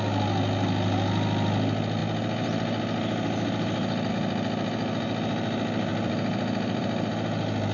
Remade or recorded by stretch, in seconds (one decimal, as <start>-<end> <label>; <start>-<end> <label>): 0.0-5.9 recorded; 5.9-7.1 remade; 7.1-7.7 recorded